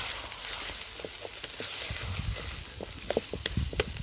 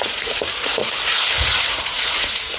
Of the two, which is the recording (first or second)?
first